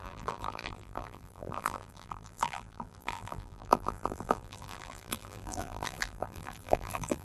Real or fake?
fake